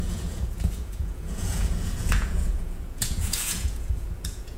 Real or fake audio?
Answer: fake